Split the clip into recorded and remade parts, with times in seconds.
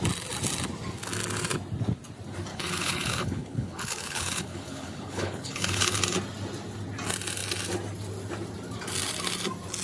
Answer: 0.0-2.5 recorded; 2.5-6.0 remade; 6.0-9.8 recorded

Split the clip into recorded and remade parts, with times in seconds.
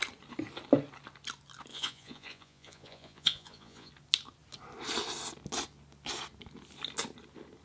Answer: 0.0-1.7 recorded; 1.7-3.9 remade; 3.9-7.6 recorded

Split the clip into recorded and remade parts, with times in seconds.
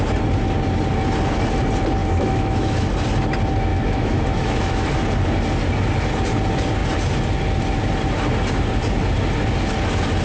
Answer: 0.0-2.0 recorded; 2.0-2.9 remade; 2.9-3.7 recorded; 3.7-4.9 remade; 4.9-10.2 recorded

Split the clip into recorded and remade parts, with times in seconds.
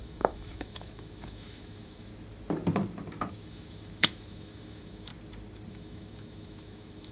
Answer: 0.0-2.1 remade; 2.1-3.3 recorded; 3.3-5.1 remade; 5.1-5.7 recorded; 5.7-7.1 remade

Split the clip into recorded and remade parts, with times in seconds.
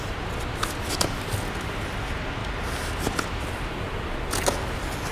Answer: 0.0-5.1 recorded